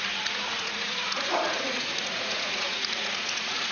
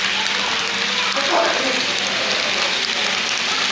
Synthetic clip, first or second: first